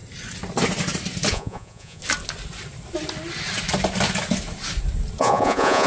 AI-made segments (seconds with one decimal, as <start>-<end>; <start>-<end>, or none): 1.3-2.0; 5.2-5.9